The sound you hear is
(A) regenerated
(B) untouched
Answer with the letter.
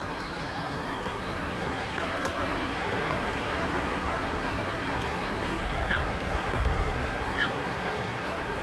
A